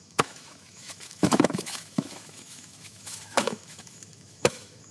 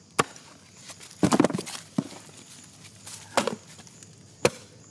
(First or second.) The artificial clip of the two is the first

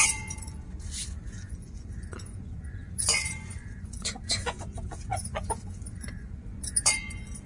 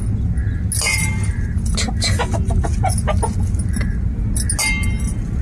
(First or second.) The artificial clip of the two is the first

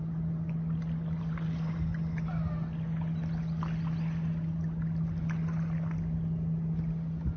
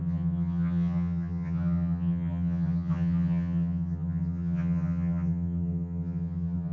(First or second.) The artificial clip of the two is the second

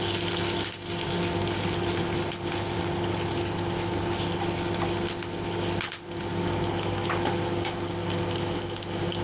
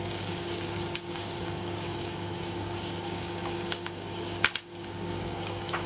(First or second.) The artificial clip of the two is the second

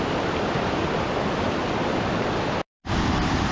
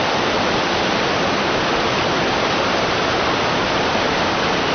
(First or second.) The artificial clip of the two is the first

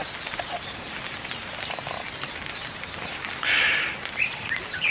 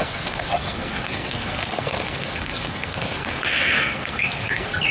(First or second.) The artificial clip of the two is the second